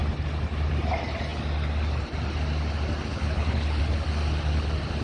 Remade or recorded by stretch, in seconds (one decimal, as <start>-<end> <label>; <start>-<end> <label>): 0.0-3.1 recorded; 3.1-3.8 remade; 3.8-5.0 recorded